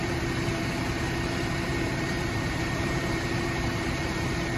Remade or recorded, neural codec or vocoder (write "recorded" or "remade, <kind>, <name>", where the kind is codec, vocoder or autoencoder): remade, vocoder, BigVGAN v2